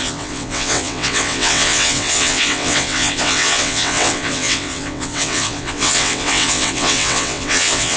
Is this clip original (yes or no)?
no